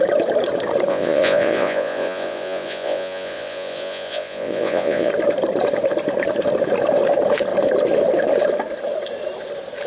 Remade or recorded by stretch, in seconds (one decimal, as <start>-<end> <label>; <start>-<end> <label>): 0.0-0.9 recorded; 0.9-5.1 remade; 5.1-9.9 recorded